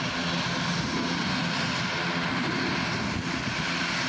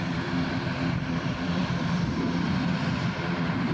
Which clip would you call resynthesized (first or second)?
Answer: second